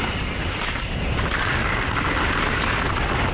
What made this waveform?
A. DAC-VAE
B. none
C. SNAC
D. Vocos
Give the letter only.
B